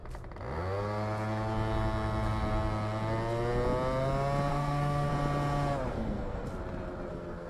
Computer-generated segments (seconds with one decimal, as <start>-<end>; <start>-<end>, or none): 4.5-5.1; 5.9-6.5; 7.1-7.5